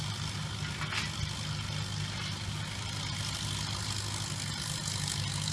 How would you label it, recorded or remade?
recorded